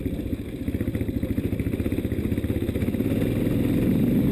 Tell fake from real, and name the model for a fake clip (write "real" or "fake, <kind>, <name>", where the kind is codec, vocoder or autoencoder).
real